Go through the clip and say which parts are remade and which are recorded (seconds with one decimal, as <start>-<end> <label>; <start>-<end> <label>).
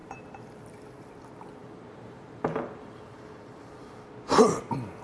0.0-1.6 recorded; 1.6-3.7 remade; 3.7-5.0 recorded